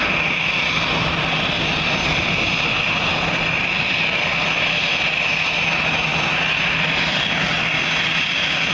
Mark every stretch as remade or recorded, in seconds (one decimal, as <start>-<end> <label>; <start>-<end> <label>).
0.0-8.7 recorded